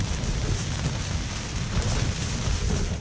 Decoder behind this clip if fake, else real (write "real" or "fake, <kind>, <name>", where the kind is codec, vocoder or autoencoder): real